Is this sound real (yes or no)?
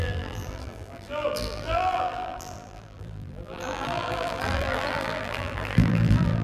no